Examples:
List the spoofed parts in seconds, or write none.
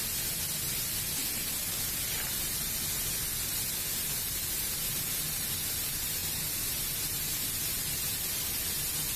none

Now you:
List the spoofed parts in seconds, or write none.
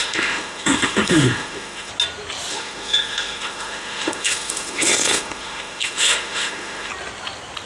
0.0-1.9 (autoencoder, DAC-VAE); 2.5-6.9